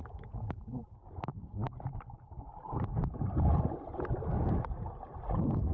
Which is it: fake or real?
real